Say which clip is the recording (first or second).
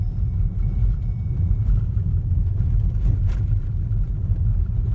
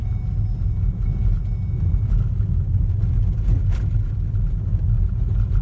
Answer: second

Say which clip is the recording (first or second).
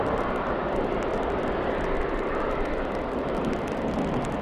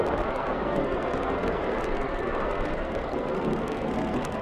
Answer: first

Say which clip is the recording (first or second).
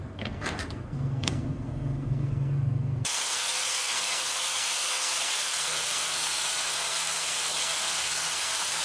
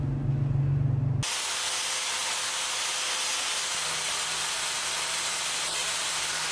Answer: second